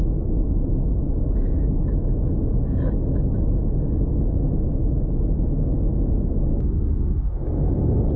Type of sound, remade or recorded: recorded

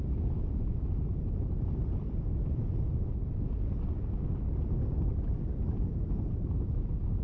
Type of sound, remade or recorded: recorded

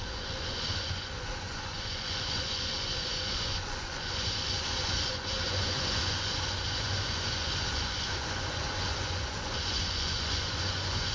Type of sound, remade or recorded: remade